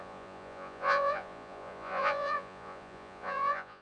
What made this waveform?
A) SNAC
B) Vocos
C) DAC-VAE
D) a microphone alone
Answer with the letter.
B